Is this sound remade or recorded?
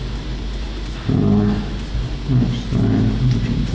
recorded